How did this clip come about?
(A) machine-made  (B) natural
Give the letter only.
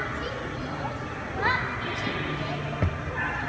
B